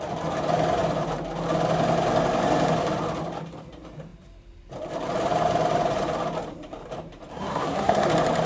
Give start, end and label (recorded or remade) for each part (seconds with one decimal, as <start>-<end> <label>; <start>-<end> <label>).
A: 0.0-7.3 recorded; 7.3-8.1 remade; 8.1-8.5 recorded